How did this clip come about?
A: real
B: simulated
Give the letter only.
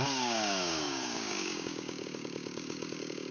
B